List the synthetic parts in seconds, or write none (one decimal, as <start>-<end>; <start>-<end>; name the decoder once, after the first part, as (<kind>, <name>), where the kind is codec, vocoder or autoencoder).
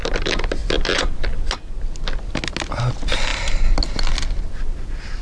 none